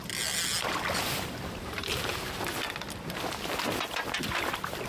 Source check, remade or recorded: recorded